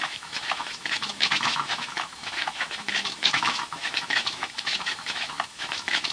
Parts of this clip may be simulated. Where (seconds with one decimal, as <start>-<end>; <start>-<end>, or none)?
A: 0.0-6.1